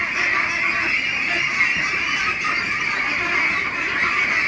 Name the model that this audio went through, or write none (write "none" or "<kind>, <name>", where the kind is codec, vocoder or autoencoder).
none